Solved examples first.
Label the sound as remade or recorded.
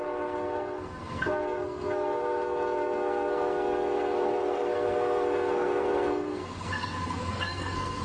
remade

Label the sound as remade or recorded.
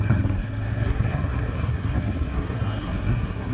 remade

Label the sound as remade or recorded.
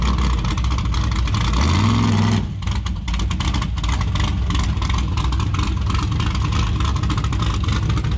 recorded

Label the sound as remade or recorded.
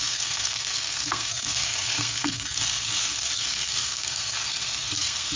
remade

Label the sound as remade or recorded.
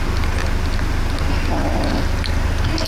recorded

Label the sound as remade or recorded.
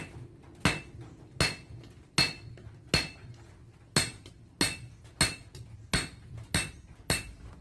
recorded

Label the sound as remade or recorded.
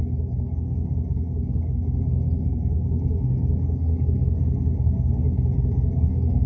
remade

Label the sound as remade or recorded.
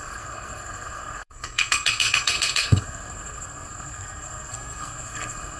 remade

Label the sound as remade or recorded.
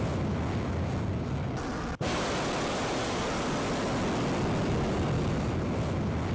recorded